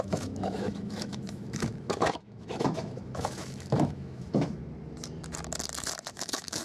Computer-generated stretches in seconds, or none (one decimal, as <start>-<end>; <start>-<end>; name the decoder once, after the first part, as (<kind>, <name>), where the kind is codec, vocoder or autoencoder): 0.0-4.6 (autoencoder, DAC-VAE); 6.1-6.6